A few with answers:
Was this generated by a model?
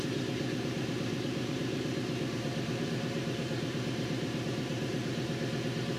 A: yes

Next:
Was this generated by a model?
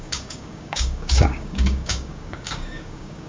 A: yes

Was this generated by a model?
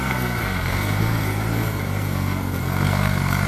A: yes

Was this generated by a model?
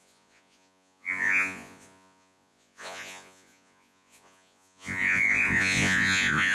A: yes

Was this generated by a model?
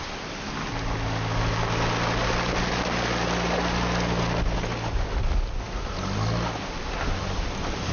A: no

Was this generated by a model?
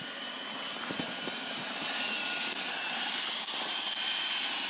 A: no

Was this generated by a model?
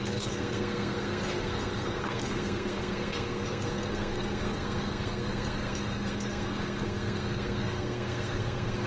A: yes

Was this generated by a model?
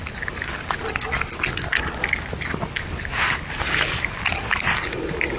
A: no